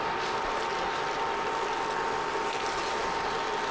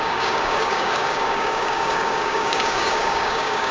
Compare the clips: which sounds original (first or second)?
first